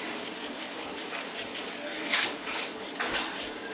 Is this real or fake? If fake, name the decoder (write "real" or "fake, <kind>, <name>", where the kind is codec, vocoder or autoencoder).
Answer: fake, codec, DAC